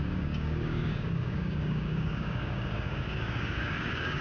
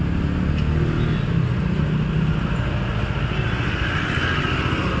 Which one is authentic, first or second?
second